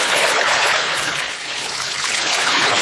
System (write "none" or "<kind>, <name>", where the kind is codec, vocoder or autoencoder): codec, HILCodec